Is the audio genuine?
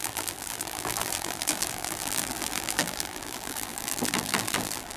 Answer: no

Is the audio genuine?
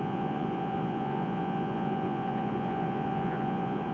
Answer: no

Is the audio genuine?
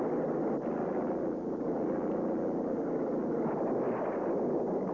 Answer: yes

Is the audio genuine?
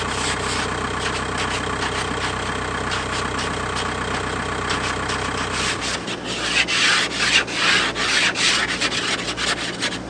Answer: yes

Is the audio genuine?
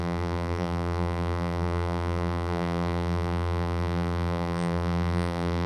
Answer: no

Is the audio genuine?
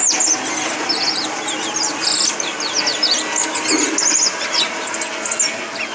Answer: yes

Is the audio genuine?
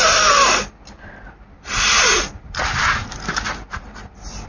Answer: yes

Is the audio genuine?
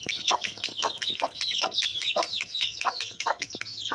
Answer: no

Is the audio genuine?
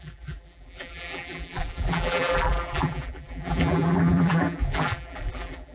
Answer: no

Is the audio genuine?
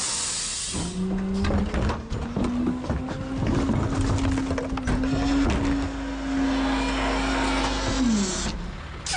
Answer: yes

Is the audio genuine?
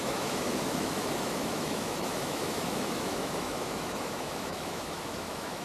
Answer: no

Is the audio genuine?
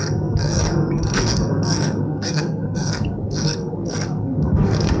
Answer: no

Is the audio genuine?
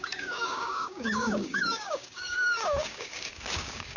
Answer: no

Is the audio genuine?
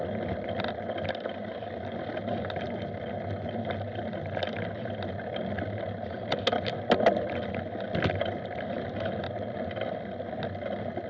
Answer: yes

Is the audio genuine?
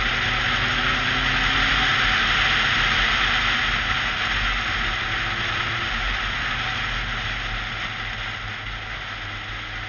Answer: yes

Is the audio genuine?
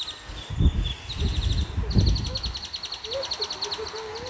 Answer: yes